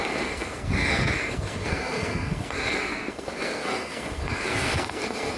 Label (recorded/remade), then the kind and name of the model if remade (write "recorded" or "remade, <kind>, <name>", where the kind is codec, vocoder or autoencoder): remade, codec, SNAC